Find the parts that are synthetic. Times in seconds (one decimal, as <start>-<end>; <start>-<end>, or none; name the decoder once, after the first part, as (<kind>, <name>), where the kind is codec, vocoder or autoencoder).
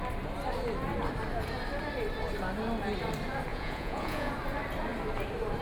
3.5-4.3 (vocoder, Vocos)